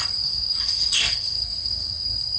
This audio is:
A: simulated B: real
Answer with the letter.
A